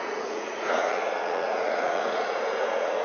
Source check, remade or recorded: remade